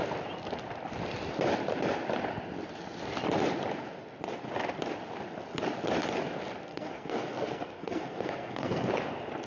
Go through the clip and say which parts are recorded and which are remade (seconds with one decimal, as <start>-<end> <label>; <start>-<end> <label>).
0.0-6.7 recorded; 6.7-8.9 remade; 8.9-9.5 recorded